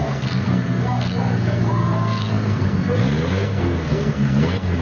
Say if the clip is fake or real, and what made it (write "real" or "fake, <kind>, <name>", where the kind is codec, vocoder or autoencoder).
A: fake, codec, SNAC